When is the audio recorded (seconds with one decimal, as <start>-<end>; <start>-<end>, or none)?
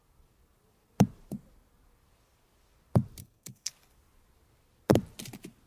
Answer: 0.0-3.2; 3.7-5.7